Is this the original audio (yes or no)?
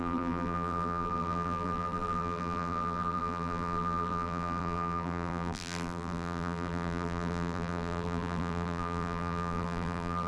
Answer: no